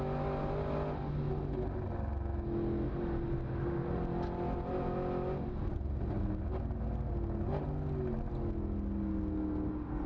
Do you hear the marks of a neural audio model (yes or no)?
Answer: no